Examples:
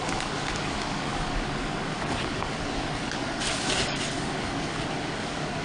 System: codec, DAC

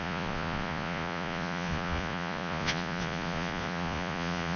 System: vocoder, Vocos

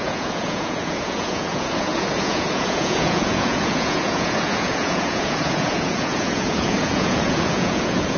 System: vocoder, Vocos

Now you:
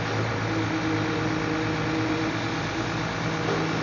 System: none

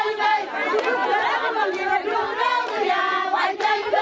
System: none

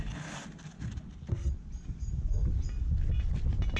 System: none